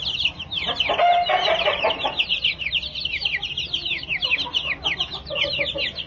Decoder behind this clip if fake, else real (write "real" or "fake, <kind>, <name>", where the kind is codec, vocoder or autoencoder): real